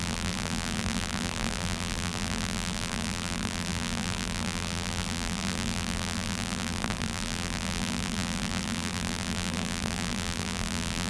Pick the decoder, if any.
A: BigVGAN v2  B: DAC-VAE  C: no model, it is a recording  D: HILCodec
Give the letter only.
A